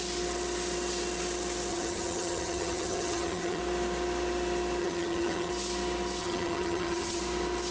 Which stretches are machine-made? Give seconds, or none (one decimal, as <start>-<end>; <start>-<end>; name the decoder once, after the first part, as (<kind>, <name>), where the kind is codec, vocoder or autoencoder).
1.7-3.6 (vocoder, HiFi-GAN); 4.8-5.5; 6.2-7.2